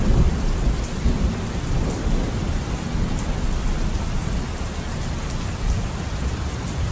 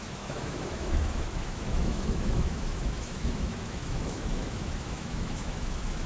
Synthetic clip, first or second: second